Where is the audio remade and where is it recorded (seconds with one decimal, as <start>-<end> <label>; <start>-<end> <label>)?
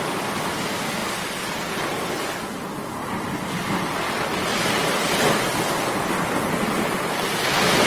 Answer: 0.0-7.9 recorded